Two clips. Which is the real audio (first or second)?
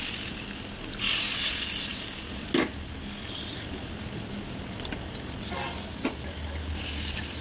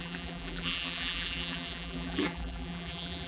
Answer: first